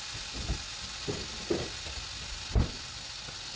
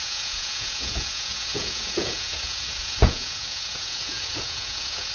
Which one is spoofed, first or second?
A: second